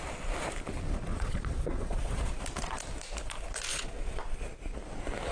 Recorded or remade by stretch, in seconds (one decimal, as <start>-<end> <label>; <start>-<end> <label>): 0.0-1.1 recorded; 1.1-2.4 remade; 2.4-3.7 recorded; 3.7-4.2 remade; 4.2-5.3 recorded